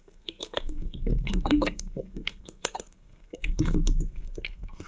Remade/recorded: remade